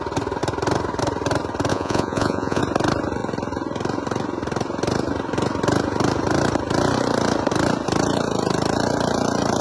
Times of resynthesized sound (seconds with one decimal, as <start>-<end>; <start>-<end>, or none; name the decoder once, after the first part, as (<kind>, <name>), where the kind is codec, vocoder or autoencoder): 1.7-2.6 (vocoder, Vocos)